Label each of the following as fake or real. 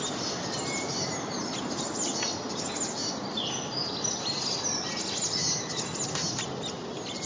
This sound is real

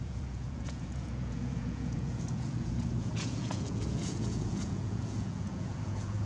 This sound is fake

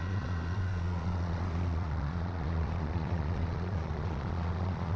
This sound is fake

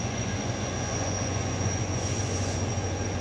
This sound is fake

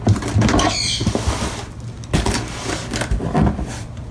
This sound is real